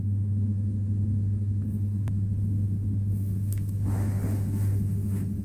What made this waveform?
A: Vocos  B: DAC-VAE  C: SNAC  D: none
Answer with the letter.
B